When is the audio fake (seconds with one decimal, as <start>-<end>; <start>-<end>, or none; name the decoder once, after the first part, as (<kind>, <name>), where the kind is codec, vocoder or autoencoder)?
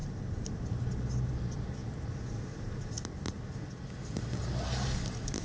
none